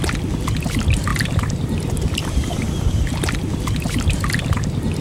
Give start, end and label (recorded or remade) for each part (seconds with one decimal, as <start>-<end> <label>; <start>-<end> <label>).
0.0-1.1 recorded; 1.1-4.1 remade; 4.1-5.0 recorded

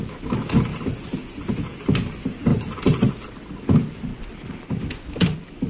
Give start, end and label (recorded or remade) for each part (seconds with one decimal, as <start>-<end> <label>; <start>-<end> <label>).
0.0-0.7 recorded; 0.7-1.5 remade; 1.5-2.5 recorded; 2.5-3.1 remade; 3.1-5.7 recorded

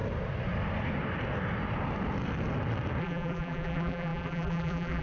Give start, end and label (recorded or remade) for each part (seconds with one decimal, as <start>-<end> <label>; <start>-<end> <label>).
0.0-3.0 recorded; 3.0-5.0 remade

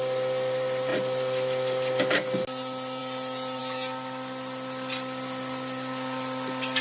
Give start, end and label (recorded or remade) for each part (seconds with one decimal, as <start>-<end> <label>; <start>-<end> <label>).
0.0-6.8 recorded

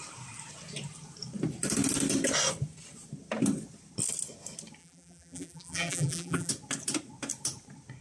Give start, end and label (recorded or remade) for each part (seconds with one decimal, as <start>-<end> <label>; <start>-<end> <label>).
0.0-4.8 recorded; 4.8-6.5 remade; 6.5-8.0 recorded

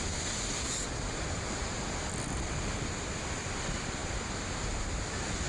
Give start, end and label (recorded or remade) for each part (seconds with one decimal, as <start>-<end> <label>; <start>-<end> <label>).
0.0-5.5 recorded

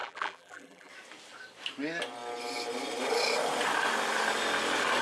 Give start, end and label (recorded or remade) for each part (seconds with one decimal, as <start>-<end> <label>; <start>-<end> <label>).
0.0-0.9 remade; 0.9-5.0 recorded